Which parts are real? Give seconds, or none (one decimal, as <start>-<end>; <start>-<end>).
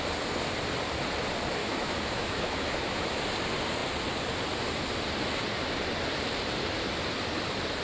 0.0-1.6; 3.2-7.8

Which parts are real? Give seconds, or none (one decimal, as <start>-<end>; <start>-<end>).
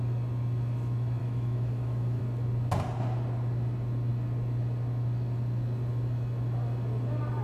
0.0-1.2; 2.2-7.4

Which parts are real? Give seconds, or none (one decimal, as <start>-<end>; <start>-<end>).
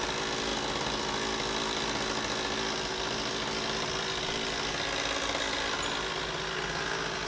0.0-7.3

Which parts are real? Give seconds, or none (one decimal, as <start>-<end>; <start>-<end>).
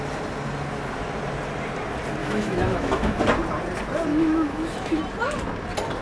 0.0-2.2; 3.2-4.1; 5.0-6.0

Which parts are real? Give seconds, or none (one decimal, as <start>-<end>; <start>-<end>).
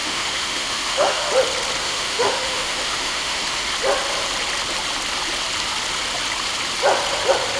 1.3-1.8; 3.7-7.6